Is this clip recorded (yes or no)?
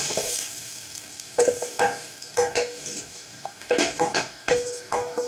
no